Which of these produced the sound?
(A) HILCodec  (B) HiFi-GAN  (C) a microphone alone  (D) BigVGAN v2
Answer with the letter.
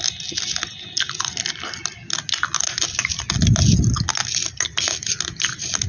C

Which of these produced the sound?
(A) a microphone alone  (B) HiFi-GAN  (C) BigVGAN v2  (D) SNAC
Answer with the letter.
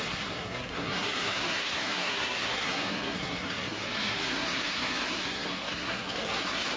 D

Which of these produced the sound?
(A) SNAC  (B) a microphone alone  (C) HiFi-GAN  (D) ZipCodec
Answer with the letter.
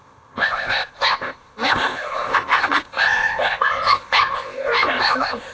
D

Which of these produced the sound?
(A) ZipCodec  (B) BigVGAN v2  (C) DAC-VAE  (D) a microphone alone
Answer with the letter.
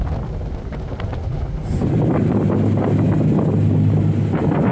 D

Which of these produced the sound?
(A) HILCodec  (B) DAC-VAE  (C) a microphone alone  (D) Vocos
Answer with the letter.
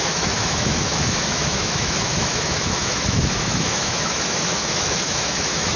B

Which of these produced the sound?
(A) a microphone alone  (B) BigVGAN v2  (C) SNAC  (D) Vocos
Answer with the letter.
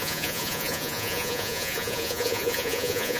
D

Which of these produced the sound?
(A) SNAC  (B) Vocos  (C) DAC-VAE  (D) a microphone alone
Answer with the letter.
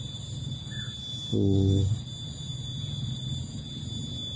D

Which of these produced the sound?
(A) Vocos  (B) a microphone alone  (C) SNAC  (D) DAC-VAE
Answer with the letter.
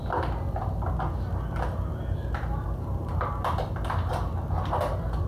B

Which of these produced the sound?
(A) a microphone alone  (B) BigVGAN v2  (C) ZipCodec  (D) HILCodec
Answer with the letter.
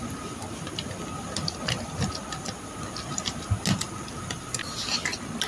A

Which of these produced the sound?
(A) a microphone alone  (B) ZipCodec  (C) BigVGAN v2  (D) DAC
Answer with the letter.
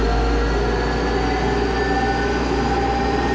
A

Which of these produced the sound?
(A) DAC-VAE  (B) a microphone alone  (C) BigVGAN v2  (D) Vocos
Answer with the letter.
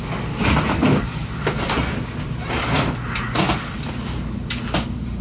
B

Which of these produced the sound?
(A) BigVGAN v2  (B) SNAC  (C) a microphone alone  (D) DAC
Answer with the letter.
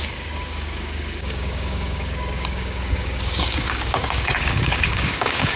D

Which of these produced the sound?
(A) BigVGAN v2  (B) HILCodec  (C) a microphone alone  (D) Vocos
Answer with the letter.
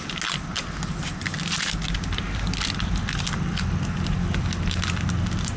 C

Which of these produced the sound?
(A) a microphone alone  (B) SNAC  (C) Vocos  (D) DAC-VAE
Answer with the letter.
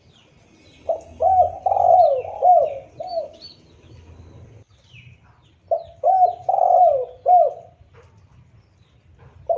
A